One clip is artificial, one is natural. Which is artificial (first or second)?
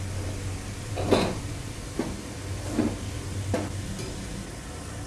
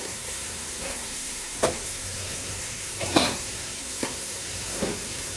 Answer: second